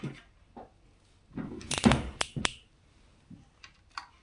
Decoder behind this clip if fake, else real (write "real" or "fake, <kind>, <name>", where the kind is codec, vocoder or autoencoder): real